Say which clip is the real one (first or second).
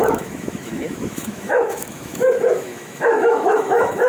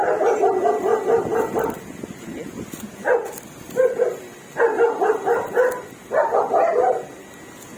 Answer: second